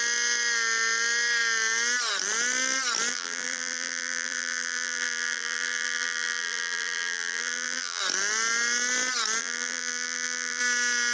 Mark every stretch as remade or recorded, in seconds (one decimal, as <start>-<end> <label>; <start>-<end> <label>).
0.0-3.1 recorded; 3.1-8.0 remade; 8.0-9.4 recorded; 9.4-10.6 remade; 10.6-11.1 recorded